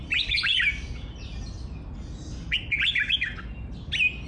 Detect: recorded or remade recorded